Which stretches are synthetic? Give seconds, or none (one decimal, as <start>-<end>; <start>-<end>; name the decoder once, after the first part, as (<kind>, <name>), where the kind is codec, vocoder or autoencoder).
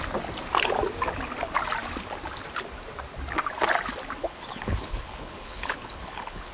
4.2-6.5 (codec, HILCodec)